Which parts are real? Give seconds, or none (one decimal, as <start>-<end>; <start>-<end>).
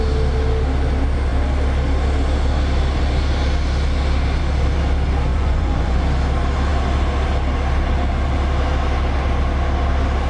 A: 0.0-5.3; 6.0-10.3